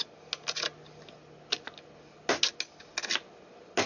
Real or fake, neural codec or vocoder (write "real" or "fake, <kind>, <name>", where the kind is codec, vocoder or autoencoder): real